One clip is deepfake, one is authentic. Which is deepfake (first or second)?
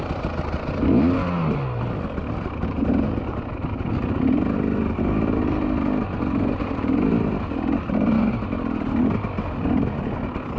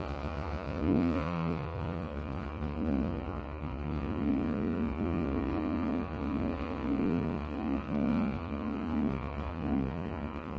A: second